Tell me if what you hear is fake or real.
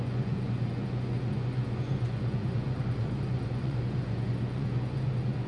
fake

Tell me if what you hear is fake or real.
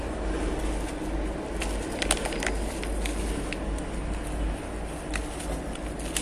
real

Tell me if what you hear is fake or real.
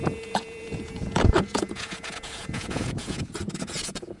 fake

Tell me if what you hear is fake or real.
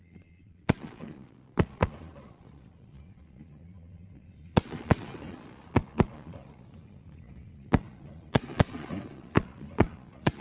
fake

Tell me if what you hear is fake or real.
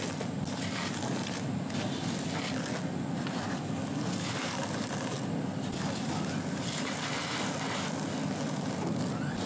real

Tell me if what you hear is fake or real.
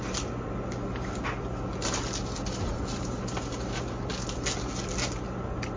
real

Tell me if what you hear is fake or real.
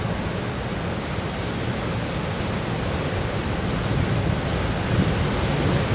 real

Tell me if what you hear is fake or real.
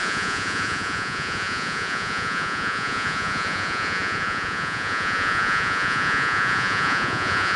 fake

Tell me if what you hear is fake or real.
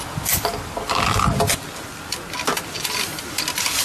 real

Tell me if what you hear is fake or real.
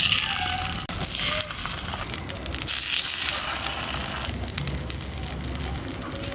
real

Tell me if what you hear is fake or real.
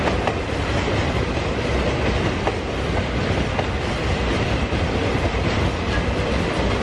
real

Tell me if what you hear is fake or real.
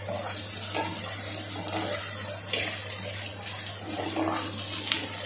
real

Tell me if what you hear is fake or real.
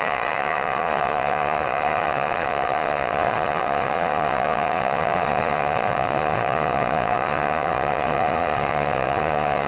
fake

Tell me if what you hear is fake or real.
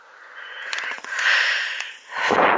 fake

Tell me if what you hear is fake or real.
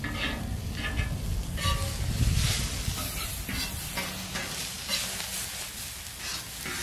real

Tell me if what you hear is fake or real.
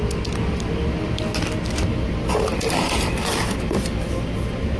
real